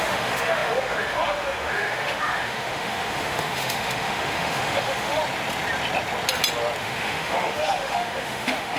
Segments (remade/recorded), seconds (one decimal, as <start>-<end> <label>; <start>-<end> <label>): 0.0-5.2 remade; 5.2-6.8 recorded; 6.8-8.8 remade